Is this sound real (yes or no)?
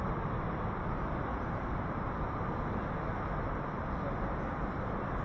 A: yes